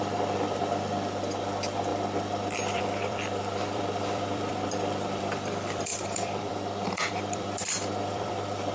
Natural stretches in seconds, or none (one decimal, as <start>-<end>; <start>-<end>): none